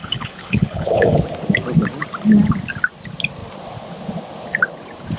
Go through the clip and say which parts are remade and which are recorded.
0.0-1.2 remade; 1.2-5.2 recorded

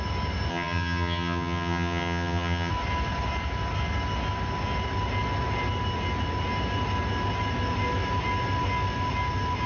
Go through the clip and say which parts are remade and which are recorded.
0.0-0.5 recorded; 0.5-2.7 remade; 2.7-9.7 recorded

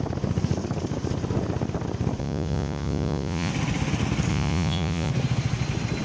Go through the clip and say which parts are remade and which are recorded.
0.0-2.2 recorded; 2.2-3.5 remade; 3.5-4.3 recorded; 4.3-5.1 remade; 5.1-6.0 recorded

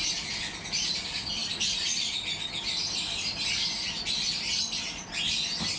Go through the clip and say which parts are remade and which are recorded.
0.0-5.8 recorded

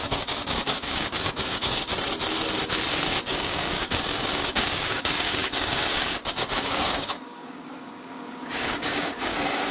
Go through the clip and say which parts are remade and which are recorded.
0.0-1.9 remade; 1.9-3.2 recorded; 3.2-9.7 remade

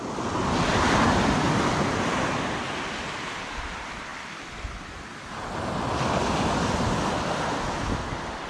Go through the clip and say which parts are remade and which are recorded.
0.0-0.7 recorded; 0.7-2.6 remade; 2.6-8.5 recorded

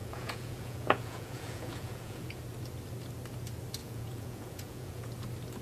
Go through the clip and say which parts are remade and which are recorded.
0.0-2.4 remade; 2.4-3.8 recorded; 3.8-5.1 remade; 5.1-5.6 recorded

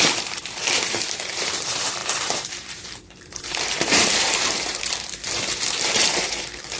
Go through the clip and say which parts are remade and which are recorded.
0.0-6.8 remade